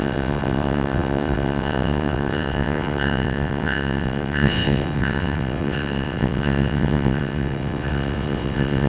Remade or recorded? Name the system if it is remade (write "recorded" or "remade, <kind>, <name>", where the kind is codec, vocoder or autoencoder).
remade, vocoder, WaveNeXt